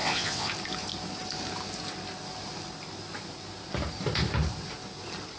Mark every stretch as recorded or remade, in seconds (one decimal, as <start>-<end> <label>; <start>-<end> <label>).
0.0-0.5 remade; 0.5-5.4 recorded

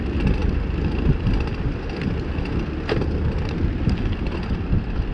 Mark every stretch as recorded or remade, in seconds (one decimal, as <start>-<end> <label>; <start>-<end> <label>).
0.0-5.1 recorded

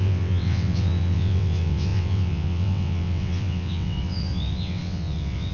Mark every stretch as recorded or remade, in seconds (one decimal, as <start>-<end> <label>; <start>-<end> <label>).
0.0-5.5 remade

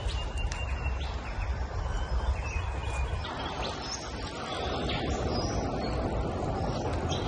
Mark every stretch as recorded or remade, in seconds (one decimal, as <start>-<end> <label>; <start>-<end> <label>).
0.0-7.3 recorded